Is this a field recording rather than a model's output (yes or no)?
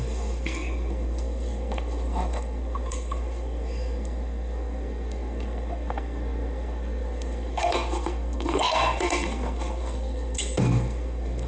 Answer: no